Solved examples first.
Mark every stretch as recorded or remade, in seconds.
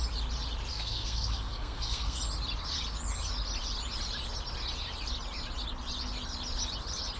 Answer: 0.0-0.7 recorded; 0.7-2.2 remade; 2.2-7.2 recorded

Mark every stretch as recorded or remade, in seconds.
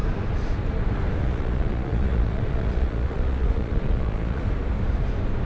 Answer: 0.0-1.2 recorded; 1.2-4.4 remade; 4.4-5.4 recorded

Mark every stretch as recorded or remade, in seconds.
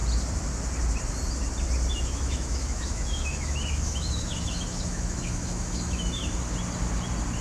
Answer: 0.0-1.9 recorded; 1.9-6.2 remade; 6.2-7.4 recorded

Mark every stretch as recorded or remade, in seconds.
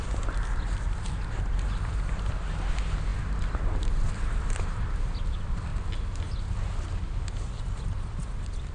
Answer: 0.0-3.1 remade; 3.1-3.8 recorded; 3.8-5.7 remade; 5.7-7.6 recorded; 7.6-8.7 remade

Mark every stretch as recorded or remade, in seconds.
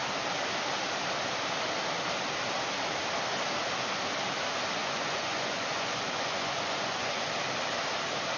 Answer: 0.0-4.8 recorded; 4.8-7.3 remade; 7.3-8.4 recorded